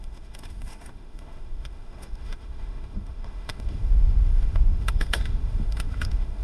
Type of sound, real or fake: fake